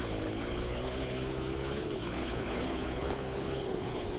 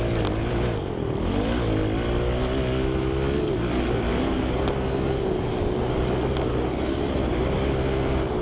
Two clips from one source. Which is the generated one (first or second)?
first